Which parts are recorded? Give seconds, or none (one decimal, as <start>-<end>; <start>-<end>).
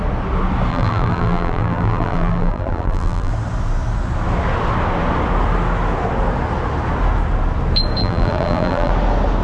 0.0-0.7; 3.3-8.0; 8.9-9.4